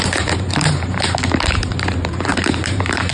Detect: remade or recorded remade